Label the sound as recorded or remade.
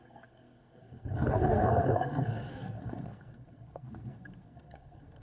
remade